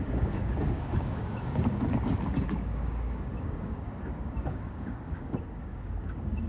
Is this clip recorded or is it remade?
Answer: remade